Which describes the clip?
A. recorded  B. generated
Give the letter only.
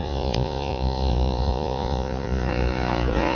B